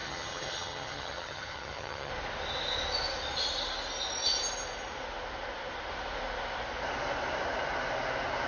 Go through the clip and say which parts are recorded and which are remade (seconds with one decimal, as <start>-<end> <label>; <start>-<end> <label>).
0.0-2.1 remade; 2.1-8.5 recorded